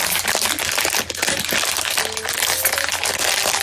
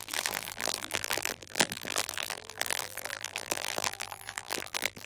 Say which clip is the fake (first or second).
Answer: second